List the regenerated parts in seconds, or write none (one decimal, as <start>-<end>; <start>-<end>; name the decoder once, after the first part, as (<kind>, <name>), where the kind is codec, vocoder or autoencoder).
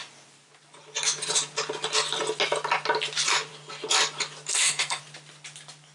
4.5-5.0 (codec, SNAC)